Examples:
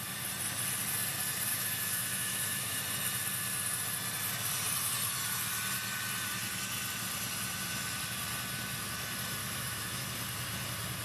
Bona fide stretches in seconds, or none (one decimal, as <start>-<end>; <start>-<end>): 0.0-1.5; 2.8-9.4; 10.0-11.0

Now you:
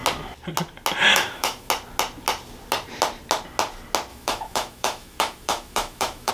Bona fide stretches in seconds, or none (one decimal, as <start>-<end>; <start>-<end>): 0.0-1.1; 1.7-4.1

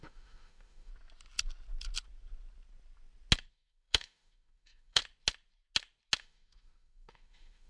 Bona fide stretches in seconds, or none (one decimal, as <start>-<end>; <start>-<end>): 0.9-3.5; 5.0-6.2

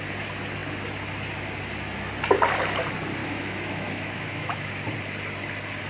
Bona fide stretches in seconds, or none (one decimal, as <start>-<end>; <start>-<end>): 0.0-3.2; 4.7-5.9

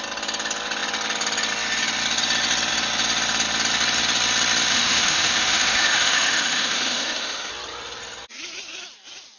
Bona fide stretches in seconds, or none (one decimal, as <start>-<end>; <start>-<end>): 0.0-4.7; 7.5-9.4

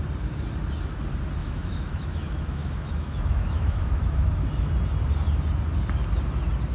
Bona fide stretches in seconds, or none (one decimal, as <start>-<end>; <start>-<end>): 0.0-1.4; 4.7-6.7

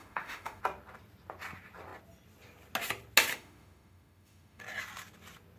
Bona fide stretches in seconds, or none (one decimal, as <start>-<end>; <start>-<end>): 0.6-3.3; 4.6-5.6